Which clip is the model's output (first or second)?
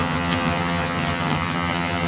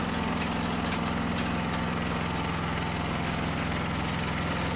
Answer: first